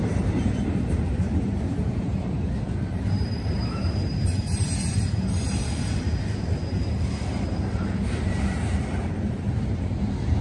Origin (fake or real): fake